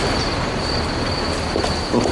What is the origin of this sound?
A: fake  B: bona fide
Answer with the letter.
B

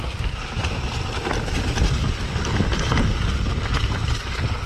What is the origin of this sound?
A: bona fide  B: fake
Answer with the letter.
A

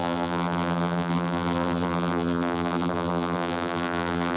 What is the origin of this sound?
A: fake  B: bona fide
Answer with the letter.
A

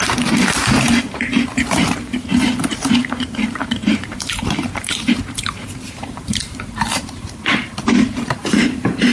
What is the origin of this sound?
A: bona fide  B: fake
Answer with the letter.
B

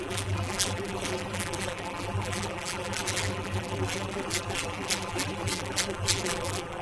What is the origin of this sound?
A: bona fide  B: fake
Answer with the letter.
B